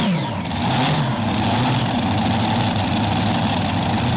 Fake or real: real